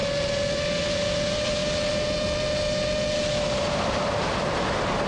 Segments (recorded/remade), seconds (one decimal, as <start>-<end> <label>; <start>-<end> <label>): 0.0-5.1 recorded